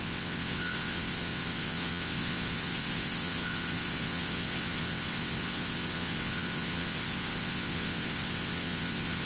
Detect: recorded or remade remade